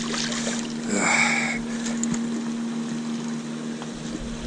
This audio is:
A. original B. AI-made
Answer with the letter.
A